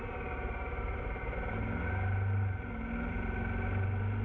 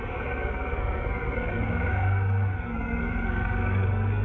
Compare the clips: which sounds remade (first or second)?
second